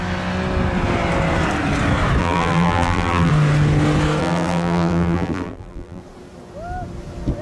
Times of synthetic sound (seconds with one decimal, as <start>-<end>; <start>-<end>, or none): 2.2-3.3; 4.2-6.0